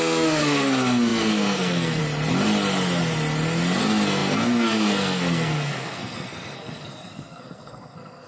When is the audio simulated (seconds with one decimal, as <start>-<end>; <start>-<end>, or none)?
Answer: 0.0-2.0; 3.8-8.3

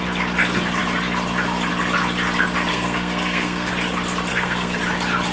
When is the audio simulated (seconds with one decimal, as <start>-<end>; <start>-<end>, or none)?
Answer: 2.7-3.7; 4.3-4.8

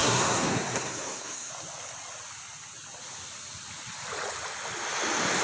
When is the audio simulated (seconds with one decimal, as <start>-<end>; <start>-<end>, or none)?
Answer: 0.0-1.5

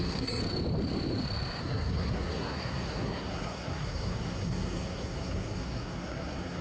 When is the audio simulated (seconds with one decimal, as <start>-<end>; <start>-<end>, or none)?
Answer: 0.0-0.4; 1.6-6.6

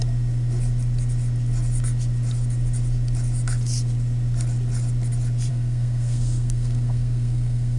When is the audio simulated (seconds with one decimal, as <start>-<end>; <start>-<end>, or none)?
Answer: 5.5-7.8